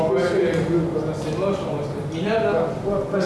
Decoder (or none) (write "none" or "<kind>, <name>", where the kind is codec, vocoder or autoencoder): none